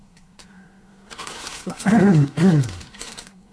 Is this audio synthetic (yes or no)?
yes